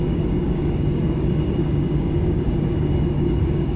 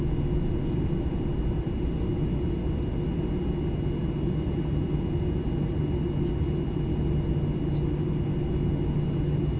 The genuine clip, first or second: second